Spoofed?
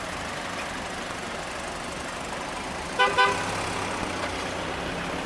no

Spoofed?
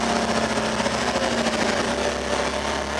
no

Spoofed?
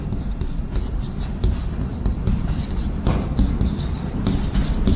yes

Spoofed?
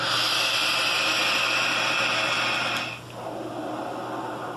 no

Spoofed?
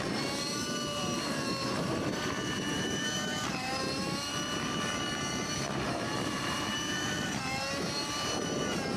yes